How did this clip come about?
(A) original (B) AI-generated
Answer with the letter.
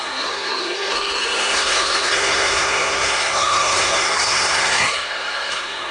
B